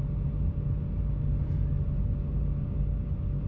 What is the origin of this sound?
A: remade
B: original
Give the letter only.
B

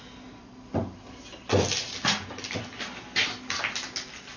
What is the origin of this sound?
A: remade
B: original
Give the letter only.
B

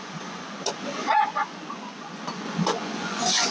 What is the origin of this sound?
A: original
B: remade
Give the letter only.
B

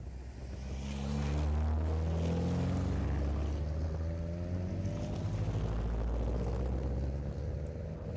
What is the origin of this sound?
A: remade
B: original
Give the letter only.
B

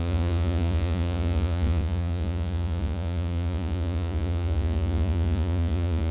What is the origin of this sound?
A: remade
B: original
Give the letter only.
A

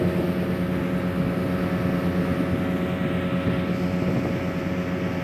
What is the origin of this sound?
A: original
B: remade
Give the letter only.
A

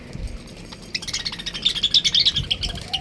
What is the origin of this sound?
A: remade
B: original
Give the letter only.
B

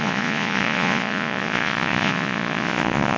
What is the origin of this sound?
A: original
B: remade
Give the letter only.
B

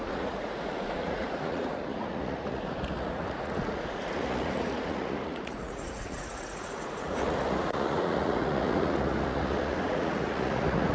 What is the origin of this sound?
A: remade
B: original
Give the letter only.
A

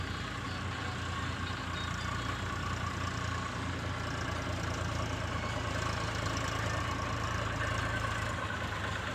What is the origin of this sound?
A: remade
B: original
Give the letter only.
B